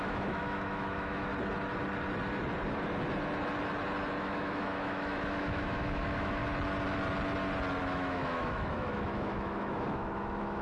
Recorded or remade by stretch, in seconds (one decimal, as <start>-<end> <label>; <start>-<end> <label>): 0.0-1.3 remade; 1.3-4.2 recorded; 4.2-6.4 remade; 6.4-7.8 recorded; 7.8-10.6 remade

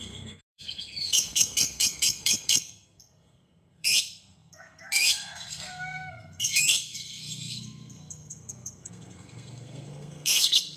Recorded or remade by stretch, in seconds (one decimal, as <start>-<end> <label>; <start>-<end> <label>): 0.0-10.8 remade

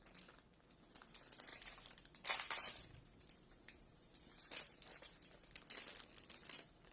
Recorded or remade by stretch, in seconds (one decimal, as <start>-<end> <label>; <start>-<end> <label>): 0.0-1.5 recorded; 1.5-5.6 remade; 5.6-6.9 recorded

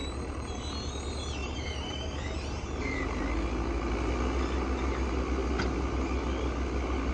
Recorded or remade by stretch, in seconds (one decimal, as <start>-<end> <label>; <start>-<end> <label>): 0.0-0.6 remade; 0.6-1.4 recorded; 1.4-3.2 remade; 3.2-7.1 recorded